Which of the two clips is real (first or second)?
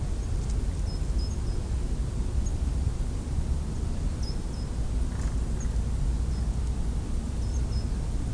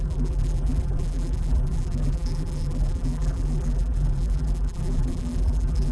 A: first